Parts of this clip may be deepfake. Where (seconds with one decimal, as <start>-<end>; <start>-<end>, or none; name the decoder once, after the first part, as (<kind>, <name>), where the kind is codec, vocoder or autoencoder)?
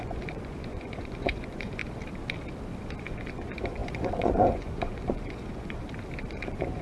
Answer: 0.0-1.8 (vocoder, Vocos); 3.0-5.8; 6.3-6.8